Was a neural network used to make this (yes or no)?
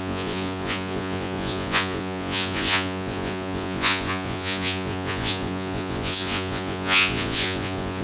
yes